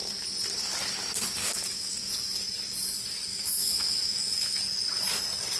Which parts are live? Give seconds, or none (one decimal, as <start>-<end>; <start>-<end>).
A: 0.0-1.4; 2.1-3.3; 4.6-5.6